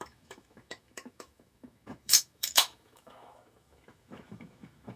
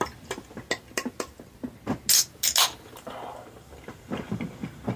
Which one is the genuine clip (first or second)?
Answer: second